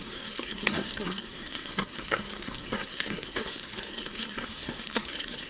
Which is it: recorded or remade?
remade